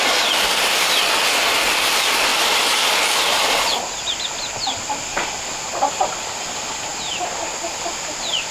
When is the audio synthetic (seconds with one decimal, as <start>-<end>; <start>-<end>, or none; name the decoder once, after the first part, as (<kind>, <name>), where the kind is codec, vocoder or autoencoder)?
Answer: none